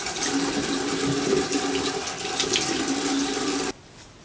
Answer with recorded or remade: remade